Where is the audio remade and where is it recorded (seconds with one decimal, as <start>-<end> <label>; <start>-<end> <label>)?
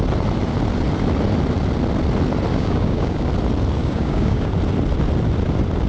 0.0-2.5 recorded; 2.5-3.3 remade; 3.3-3.8 recorded; 3.8-4.5 remade; 4.5-5.9 recorded